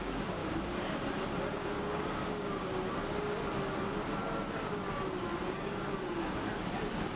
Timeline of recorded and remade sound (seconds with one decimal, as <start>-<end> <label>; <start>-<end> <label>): 0.0-0.4 remade; 0.4-1.6 recorded; 1.6-2.7 remade; 2.7-7.2 recorded